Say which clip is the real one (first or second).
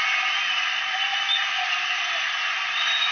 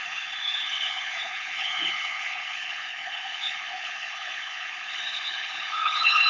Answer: first